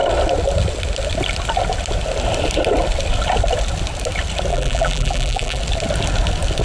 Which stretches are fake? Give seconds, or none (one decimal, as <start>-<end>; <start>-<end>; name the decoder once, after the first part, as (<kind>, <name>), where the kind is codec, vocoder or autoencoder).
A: 4.5-5.6 (vocoder, BigVGAN v2)